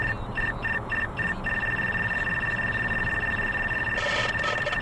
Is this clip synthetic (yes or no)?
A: no